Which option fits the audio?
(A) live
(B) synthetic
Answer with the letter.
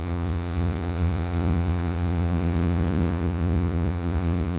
B